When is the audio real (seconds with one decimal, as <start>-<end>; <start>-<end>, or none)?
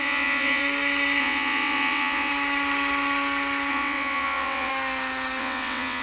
0.6-1.2; 2.3-3.7; 4.7-5.4